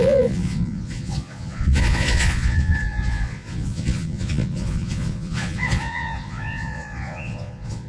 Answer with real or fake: fake